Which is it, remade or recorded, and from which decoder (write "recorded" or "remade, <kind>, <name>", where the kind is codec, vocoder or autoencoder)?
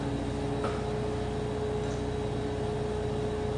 recorded